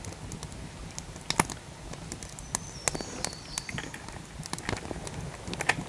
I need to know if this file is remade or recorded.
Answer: recorded